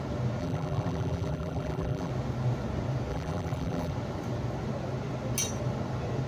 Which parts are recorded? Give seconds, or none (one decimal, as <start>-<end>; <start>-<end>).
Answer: 0.0-0.4; 2.1-3.1; 3.9-6.3